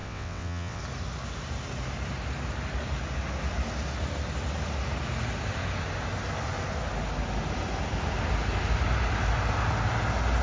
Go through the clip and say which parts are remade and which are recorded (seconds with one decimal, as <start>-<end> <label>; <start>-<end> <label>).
0.0-0.8 remade; 0.8-10.4 recorded